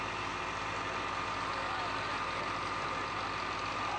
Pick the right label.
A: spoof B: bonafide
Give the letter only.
B